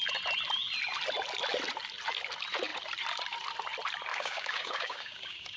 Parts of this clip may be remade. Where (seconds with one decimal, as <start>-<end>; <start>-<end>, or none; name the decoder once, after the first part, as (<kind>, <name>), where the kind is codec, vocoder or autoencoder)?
4.1-5.6 (codec, DAC)